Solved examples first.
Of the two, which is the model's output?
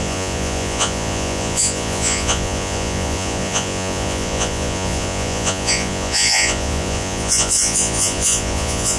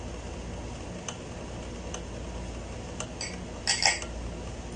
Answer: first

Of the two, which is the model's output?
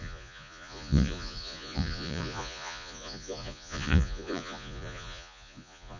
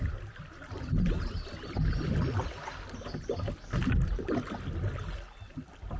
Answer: first